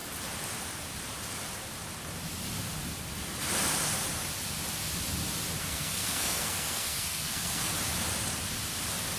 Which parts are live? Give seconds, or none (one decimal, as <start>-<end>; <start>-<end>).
0.0-5.6; 7.7-9.2